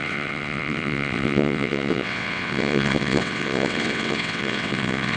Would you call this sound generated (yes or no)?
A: yes